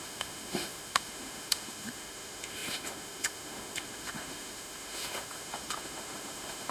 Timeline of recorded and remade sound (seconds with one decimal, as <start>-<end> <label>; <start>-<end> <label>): 0.0-6.7 remade

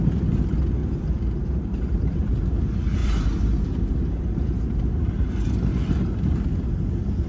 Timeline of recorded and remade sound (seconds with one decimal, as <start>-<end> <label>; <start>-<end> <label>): 0.0-0.8 recorded; 0.8-2.6 remade; 2.6-3.0 recorded; 3.0-5.3 remade; 5.3-5.7 recorded; 5.7-6.5 remade; 6.5-7.3 recorded

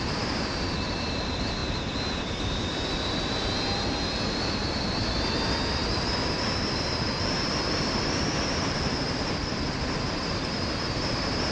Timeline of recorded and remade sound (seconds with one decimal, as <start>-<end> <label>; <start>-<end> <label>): 0.0-5.8 recorded; 5.8-9.8 remade; 9.8-11.5 recorded

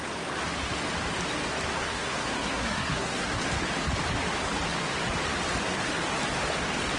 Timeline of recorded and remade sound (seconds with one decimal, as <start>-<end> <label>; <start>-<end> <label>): 0.0-1.8 recorded; 1.8-3.4 remade; 3.4-7.0 recorded